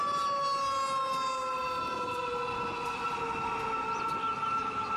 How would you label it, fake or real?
real